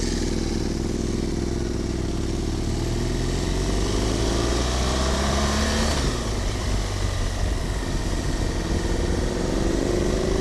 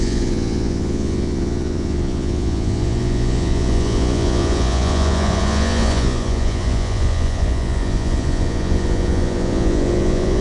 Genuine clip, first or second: first